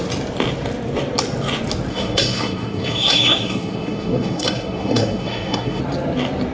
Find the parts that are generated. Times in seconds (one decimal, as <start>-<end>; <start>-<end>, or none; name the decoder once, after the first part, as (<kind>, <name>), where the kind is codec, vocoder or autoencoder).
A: 1.9-5.8 (codec, SNAC)